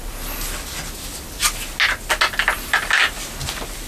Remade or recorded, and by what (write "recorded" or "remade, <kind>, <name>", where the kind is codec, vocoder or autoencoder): recorded